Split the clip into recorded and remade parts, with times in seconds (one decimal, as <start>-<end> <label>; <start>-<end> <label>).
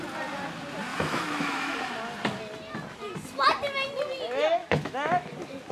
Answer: 0.0-0.9 recorded; 0.9-1.7 remade; 1.7-4.6 recorded; 4.6-5.3 remade; 5.3-5.7 recorded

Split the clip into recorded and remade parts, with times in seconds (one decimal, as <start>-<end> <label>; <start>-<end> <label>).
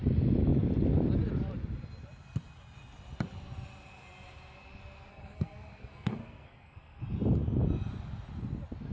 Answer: 0.0-5.1 recorded; 5.1-7.0 remade; 7.0-8.9 recorded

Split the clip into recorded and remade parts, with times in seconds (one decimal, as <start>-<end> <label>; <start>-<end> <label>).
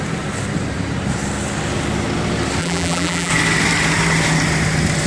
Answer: 0.0-2.6 recorded; 2.6-3.3 remade; 3.3-5.1 recorded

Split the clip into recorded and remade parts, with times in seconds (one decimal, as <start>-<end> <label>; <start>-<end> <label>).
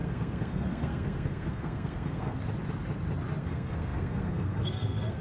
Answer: 0.0-2.4 remade; 2.4-3.4 recorded; 3.4-5.2 remade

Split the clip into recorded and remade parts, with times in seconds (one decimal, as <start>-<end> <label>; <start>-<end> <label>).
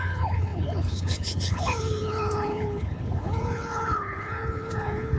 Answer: 0.0-5.2 remade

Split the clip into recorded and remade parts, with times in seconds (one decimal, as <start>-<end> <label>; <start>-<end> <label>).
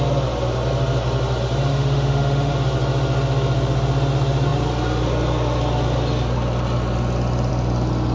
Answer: 0.0-1.7 recorded; 1.7-2.5 remade; 2.5-8.1 recorded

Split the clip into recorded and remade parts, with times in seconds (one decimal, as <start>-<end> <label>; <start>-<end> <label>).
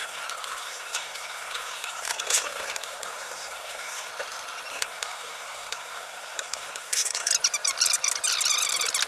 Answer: 0.0-4.1 remade; 4.1-4.7 recorded; 4.7-7.3 remade; 7.3-9.1 recorded